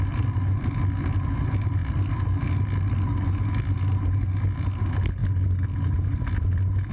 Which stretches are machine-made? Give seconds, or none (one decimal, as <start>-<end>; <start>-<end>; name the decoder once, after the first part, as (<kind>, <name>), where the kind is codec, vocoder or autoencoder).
none